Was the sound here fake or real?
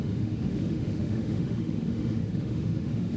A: fake